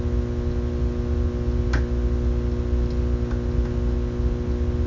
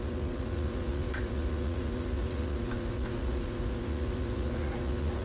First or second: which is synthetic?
second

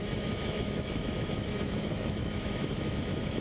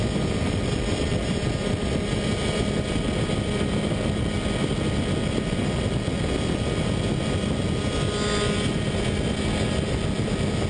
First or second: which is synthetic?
first